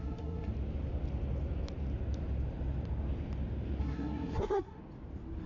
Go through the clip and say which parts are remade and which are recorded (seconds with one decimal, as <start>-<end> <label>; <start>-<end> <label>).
0.0-0.5 remade; 0.5-3.8 recorded; 3.8-4.8 remade; 4.8-5.5 recorded